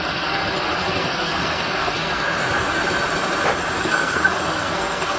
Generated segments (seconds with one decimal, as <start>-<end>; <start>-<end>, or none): 0.0-0.4; 0.9-2.4; 3.8-5.2